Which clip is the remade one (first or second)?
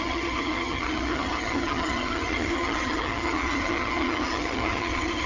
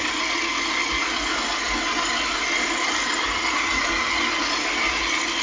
first